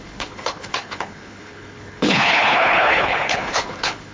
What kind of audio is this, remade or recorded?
remade